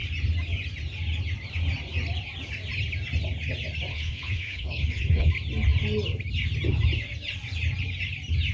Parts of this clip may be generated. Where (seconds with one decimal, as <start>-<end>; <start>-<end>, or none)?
3.9-5.3